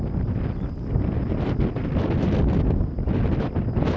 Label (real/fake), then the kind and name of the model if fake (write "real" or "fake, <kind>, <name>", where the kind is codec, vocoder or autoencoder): real